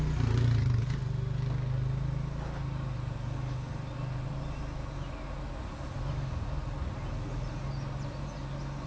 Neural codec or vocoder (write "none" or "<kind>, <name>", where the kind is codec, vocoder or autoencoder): none